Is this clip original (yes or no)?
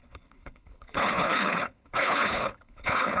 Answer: no